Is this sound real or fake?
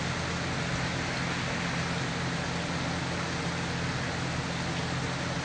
real